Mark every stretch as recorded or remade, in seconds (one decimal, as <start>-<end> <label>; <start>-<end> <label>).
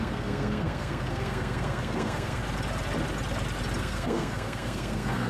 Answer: 0.0-2.4 remade; 2.4-3.8 recorded; 3.8-5.3 remade